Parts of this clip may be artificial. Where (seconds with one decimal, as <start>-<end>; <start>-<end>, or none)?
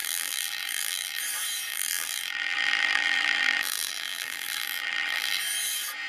0.0-1.2; 1.7-5.4